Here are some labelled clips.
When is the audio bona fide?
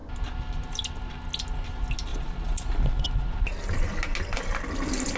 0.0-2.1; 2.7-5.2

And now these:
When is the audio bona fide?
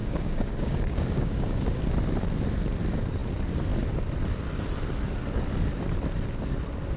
1.8-7.0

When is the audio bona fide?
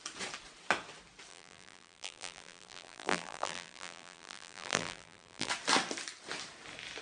0.0-1.3; 5.5-7.0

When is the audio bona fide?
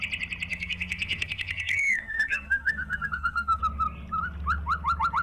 0.0-0.5; 3.6-5.2